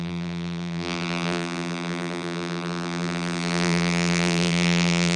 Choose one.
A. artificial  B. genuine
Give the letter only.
A